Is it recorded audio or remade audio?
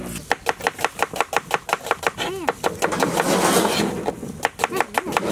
recorded